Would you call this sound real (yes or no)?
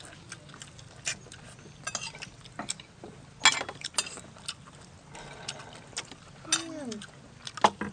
yes